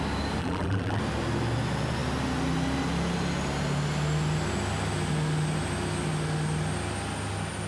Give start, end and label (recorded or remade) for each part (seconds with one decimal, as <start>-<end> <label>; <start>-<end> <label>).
0.0-0.4 recorded; 0.4-1.0 remade; 1.0-7.7 recorded

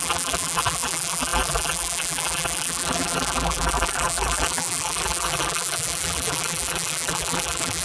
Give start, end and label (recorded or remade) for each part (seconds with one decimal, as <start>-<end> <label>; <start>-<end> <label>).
0.0-7.8 remade

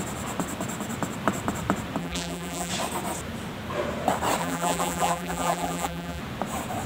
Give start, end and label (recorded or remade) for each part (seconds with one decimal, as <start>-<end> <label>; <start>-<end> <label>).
0.0-2.0 recorded; 2.0-2.7 remade; 2.7-4.4 recorded; 4.4-6.2 remade; 6.2-6.9 recorded

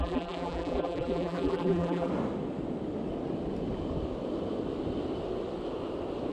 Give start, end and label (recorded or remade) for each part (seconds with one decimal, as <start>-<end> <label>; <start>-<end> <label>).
0.0-2.1 remade; 2.1-6.3 recorded

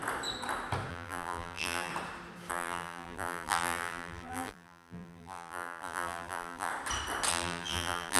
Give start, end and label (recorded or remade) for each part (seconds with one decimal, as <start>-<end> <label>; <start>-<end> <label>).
0.0-0.9 recorded; 0.9-1.9 remade; 1.9-2.5 recorded; 2.5-6.7 remade; 6.7-7.3 recorded; 7.3-8.2 remade